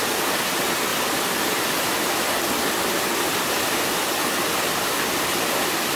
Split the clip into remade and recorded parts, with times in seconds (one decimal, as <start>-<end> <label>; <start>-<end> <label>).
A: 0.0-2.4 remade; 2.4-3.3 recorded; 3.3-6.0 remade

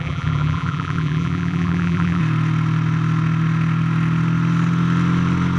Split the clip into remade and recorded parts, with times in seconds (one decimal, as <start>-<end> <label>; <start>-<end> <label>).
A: 0.0-2.2 remade; 2.2-5.6 recorded

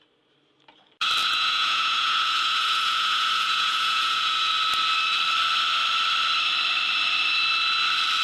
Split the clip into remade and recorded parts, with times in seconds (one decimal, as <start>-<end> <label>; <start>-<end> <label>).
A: 0.0-1.2 recorded; 1.2-4.5 remade; 4.5-8.2 recorded

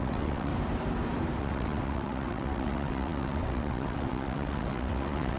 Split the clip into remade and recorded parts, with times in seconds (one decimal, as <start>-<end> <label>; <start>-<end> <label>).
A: 0.0-0.5 remade; 0.5-1.4 recorded; 1.4-5.4 remade

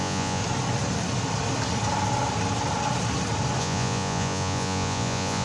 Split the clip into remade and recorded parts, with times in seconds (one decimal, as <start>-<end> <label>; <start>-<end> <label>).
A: 0.0-0.4 remade; 0.4-3.6 recorded; 3.6-5.4 remade

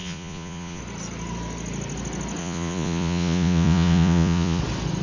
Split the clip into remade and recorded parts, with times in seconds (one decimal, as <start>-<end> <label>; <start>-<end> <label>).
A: 0.0-0.8 remade; 0.8-2.4 recorded; 2.4-4.6 remade; 4.6-5.0 recorded

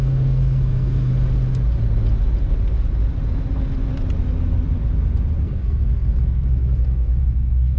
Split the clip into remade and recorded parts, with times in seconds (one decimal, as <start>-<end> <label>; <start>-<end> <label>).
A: 0.0-1.1 remade; 1.1-5.4 recorded; 5.4-7.8 remade